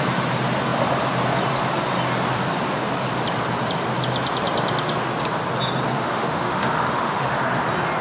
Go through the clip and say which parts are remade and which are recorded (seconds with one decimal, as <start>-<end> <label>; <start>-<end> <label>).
0.0-5.9 recorded; 5.9-7.4 remade; 7.4-8.0 recorded